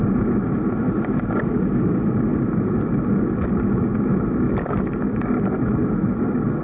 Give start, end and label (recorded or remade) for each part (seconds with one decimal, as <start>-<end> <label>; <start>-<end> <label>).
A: 0.0-6.6 recorded